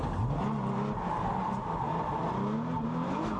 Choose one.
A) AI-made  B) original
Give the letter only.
B